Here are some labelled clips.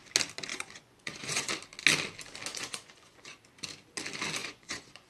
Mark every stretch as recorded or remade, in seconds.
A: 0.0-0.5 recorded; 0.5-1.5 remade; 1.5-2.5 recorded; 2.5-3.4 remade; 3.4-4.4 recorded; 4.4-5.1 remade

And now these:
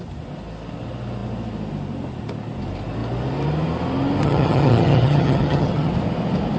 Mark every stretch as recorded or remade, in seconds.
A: 0.0-4.2 recorded; 4.2-5.9 remade; 5.9-6.6 recorded

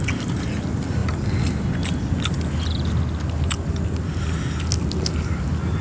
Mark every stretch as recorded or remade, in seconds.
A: 0.0-5.8 recorded

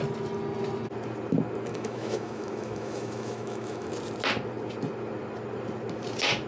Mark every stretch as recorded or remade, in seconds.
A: 0.0-1.7 recorded; 1.7-3.9 remade; 3.9-6.5 recorded